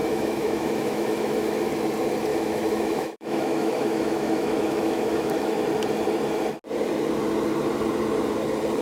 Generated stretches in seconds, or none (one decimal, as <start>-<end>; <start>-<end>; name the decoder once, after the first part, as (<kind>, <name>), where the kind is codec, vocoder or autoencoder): 0.0-1.7 (autoencoder, DAC-VAE); 2.3-5.6